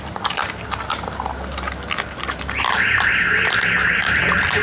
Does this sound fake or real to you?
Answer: fake